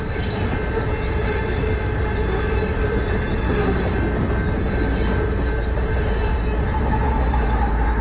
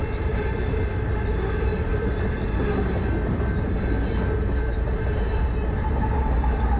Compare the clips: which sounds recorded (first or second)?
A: first